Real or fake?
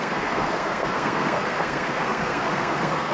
fake